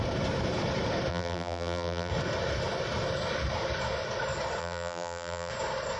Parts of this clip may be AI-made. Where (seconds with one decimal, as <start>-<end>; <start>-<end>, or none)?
1.1-2.1; 4.6-5.5